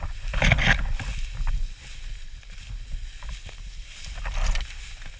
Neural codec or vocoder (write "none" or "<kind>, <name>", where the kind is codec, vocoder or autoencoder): none